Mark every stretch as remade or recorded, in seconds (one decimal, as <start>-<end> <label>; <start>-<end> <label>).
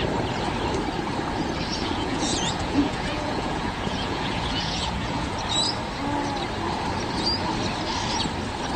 0.0-1.7 recorded; 1.7-5.4 remade; 5.4-8.8 recorded